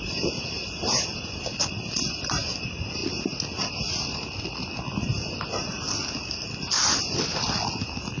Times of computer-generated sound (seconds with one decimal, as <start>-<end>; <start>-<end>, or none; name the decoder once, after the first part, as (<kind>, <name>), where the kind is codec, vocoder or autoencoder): 0.0-3.0 (vocoder, BigVGAN v2)